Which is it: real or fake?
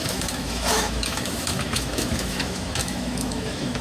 fake